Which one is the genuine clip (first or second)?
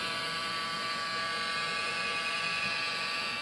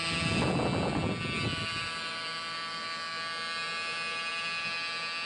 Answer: second